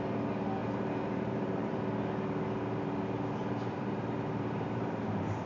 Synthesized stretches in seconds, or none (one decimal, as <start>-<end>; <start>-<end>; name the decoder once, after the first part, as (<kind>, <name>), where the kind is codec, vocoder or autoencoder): 0.6-1.8 (vocoder, BigVGAN v2); 3.4-5.5